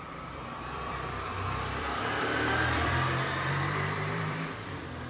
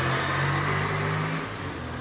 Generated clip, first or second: first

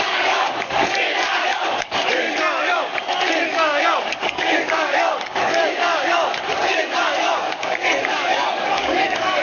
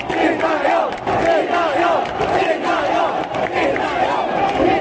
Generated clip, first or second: first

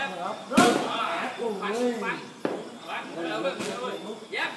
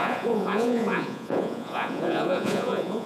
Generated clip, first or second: second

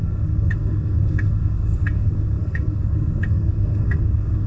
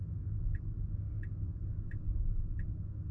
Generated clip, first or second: first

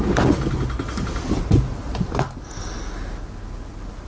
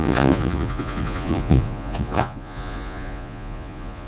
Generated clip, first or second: second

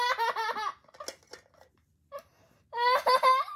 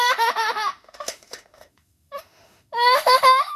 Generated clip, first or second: second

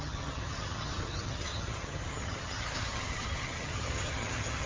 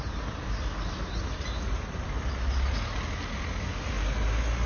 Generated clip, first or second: first